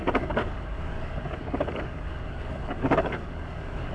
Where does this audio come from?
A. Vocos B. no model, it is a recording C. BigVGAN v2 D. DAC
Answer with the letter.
D